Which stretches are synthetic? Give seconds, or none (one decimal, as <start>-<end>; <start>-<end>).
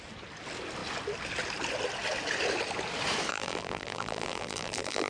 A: 3.3-5.1